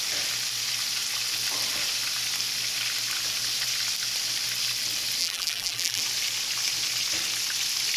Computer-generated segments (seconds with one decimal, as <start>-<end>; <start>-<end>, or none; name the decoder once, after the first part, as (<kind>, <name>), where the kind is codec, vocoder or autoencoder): 5.2-6.0 (vocoder, BigVGAN v2)

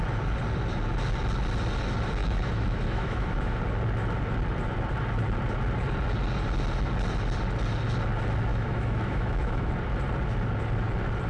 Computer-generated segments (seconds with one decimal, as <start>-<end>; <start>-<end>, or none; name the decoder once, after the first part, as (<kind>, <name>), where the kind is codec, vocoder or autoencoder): 2.2-3.6 (autoencoder, DAC-VAE); 8.5-9.7

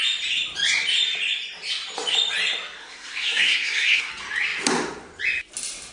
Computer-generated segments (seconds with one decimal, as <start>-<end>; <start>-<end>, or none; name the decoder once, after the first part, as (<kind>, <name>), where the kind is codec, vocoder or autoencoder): 2.8-4.1 (codec, SNAC)